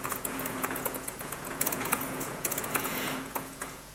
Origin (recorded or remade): remade